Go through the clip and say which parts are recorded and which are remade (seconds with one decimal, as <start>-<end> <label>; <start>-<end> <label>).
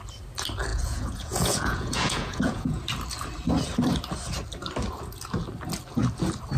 0.0-0.7 recorded; 0.7-2.8 remade; 2.8-6.6 recorded